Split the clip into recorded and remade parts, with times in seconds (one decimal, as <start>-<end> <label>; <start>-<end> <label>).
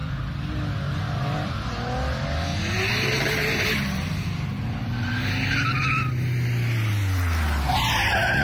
0.0-8.4 recorded